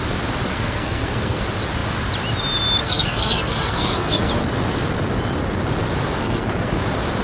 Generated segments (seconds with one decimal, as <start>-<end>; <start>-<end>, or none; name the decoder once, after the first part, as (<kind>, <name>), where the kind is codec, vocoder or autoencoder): 0.5-1.4 (codec, SNAC); 2.8-4.3; 6.2-6.8